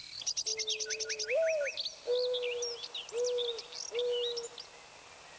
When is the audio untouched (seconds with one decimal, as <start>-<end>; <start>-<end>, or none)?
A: 0.0-5.4